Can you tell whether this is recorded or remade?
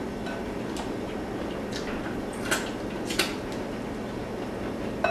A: recorded